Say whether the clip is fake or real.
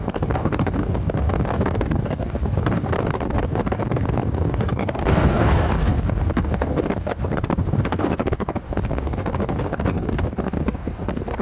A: fake